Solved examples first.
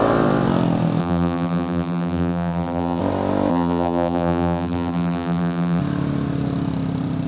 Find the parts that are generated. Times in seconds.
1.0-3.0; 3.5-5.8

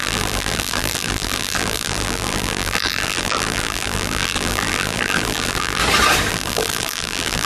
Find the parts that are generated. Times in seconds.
0.0-5.8; 6.3-7.5

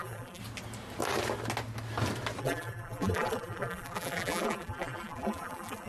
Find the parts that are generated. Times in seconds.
0.0-0.4; 2.4-5.9

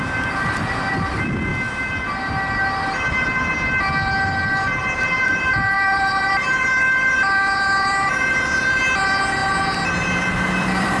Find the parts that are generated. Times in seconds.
0.0-1.5; 5.7-9.4; 9.9-11.0